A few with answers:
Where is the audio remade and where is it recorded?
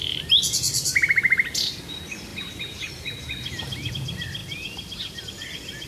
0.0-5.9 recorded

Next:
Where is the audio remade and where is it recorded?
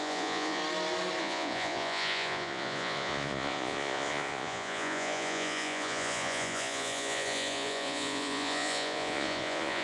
0.0-0.6 remade; 0.6-1.2 recorded; 1.2-9.8 remade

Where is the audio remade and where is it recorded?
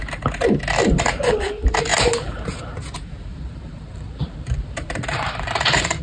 0.0-1.9 recorded; 1.9-2.6 remade; 2.6-3.3 recorded; 3.3-6.0 remade